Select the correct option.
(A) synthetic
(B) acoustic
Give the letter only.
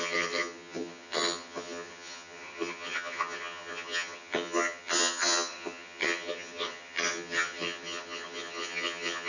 A